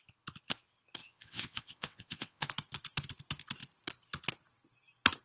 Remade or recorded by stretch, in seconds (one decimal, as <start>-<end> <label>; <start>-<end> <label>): 0.0-1.0 recorded; 1.0-2.5 remade; 2.5-5.2 recorded